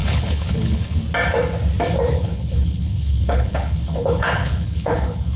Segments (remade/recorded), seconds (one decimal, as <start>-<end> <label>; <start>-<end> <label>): 0.0-1.0 remade; 1.0-2.1 recorded; 2.1-5.4 remade